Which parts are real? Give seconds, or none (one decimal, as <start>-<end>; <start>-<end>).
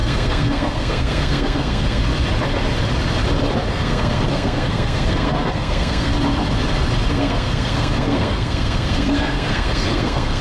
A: 2.0-3.7; 6.1-7.1